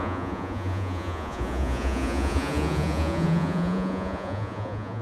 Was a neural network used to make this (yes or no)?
yes